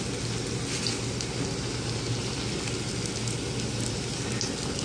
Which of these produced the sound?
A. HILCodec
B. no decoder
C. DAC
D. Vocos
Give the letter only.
B